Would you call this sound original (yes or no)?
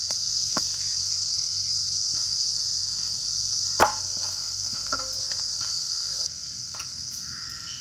no